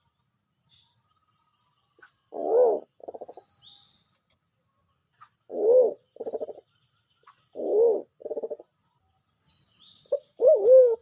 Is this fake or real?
real